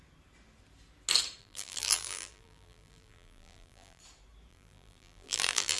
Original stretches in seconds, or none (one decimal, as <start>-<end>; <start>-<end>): 0.0-1.4; 4.0-4.5